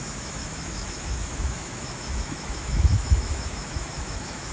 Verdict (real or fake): fake